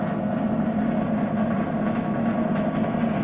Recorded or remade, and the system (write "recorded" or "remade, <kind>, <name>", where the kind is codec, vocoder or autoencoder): recorded